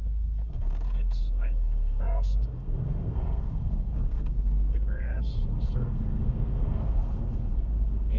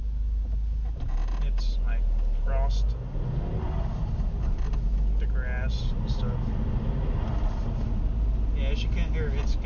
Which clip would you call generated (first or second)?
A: first